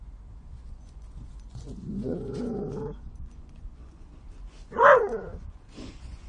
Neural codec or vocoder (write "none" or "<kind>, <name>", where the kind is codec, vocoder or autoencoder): vocoder, Vocos